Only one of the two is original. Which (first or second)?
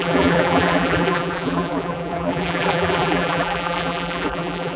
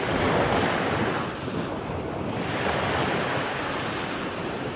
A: second